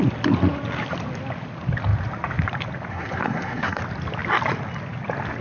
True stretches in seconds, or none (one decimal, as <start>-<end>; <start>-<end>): 0.0-2.9; 3.8-5.4